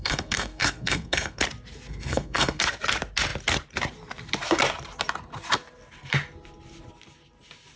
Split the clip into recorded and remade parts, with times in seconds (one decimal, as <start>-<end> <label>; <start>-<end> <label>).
0.0-1.4 remade; 1.4-1.9 recorded; 1.9-2.6 remade; 2.6-7.8 recorded